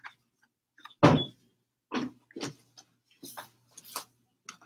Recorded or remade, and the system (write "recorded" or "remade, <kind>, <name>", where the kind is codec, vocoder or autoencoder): recorded